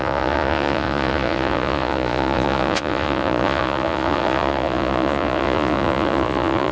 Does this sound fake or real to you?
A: fake